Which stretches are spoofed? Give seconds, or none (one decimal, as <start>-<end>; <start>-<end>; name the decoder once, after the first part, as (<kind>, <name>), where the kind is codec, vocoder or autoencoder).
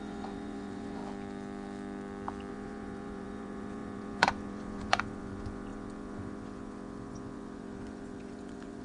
0.0-1.0 (vocoder, Vocos); 2.5-8.8